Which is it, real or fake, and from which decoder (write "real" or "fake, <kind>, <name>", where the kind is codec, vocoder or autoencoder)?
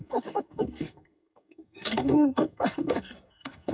fake, codec, SNAC